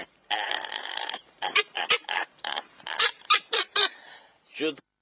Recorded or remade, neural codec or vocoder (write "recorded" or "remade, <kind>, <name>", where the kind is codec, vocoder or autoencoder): remade, vocoder, BigVGAN v2